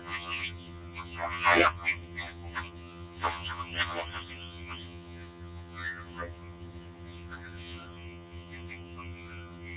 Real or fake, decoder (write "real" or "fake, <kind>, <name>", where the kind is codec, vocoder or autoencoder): fake, vocoder, HiFi-GAN